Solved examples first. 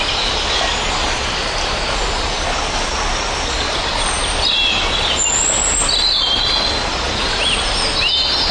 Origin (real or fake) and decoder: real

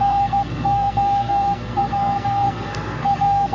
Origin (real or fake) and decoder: fake, codec, SNAC